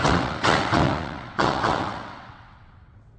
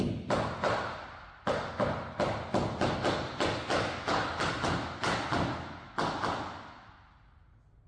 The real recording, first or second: second